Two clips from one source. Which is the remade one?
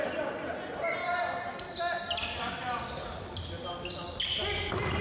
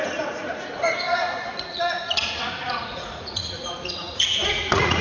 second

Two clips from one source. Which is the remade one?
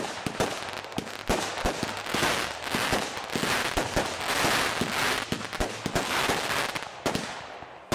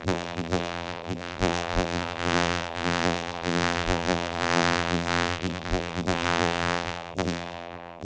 second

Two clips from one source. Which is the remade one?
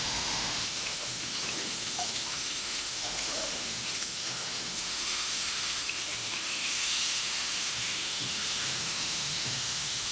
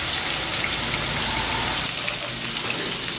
first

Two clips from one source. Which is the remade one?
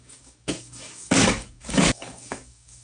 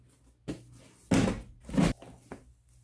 first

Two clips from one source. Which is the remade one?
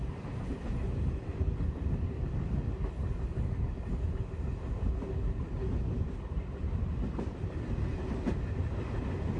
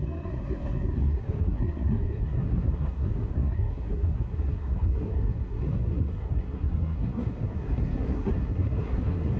second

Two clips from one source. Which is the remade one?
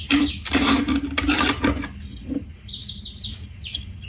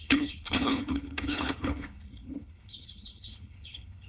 second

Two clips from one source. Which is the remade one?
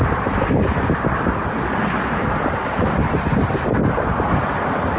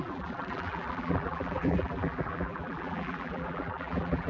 second